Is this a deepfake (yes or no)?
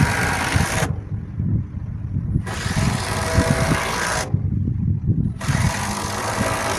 no